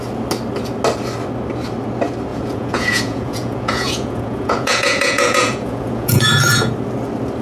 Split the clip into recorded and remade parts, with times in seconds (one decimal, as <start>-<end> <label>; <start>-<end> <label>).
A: 0.0-2.3 recorded; 2.3-6.7 remade; 6.7-7.4 recorded